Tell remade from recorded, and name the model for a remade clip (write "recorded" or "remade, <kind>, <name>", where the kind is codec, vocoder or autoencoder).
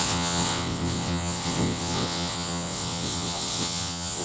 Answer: remade, vocoder, WaveNeXt